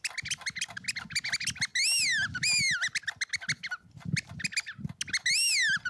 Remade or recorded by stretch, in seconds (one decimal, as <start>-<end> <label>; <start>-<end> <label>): 0.0-5.9 recorded